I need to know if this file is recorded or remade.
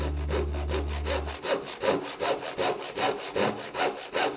recorded